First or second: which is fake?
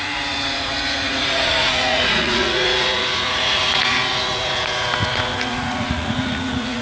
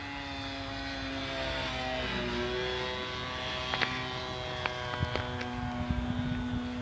first